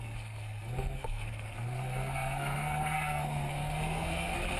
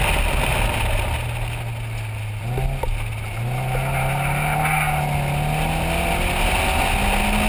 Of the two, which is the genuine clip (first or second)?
second